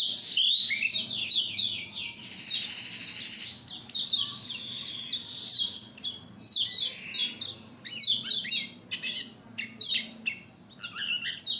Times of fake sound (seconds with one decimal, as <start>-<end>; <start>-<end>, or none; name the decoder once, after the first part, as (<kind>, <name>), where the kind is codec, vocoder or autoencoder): 1.2-2.2 (codec, DAC)